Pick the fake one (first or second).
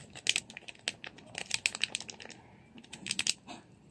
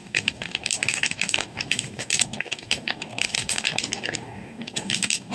second